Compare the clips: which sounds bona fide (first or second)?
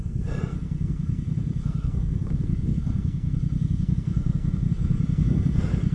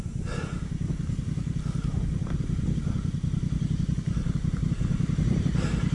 second